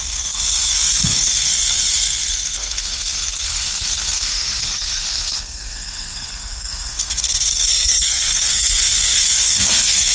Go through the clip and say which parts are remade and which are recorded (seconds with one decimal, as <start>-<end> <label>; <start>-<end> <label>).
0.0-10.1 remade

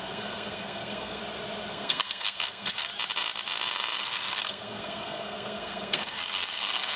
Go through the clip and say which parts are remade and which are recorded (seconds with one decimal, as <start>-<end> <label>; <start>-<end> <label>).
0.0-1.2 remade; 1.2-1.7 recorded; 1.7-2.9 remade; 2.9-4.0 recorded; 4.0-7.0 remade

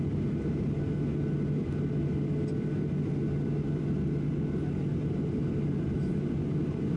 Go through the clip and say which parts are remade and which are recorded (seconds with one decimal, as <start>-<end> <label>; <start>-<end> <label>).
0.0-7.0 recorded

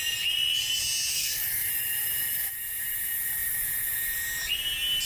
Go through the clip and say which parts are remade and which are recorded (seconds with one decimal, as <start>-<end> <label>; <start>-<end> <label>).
0.0-1.1 recorded; 1.1-1.7 remade; 1.7-5.1 recorded

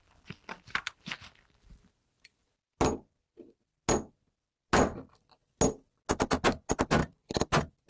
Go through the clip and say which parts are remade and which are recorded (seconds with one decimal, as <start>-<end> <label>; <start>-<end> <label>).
0.0-7.9 recorded

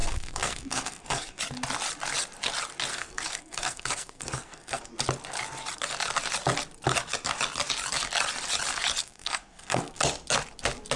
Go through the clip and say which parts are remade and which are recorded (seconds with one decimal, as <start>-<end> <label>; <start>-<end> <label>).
0.0-1.4 remade; 1.4-2.9 recorded; 2.9-4.9 remade; 4.9-9.0 recorded; 9.0-10.0 remade; 10.0-11.0 recorded

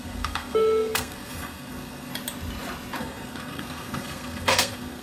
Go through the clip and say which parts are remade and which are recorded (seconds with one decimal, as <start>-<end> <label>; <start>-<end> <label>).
0.0-2.1 remade; 2.1-3.0 recorded; 3.0-5.0 remade

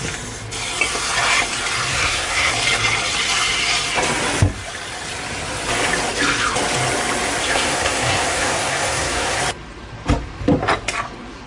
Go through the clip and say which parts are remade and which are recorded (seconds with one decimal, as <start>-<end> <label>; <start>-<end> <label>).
0.0-1.9 recorded; 1.9-2.5 remade; 2.5-7.4 recorded; 7.4-9.4 remade; 9.4-11.5 recorded